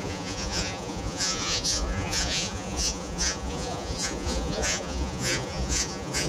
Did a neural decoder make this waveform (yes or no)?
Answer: yes